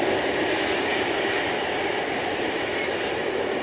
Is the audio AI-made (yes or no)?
no